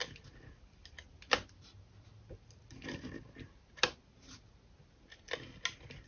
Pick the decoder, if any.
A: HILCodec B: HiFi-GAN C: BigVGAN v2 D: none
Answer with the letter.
D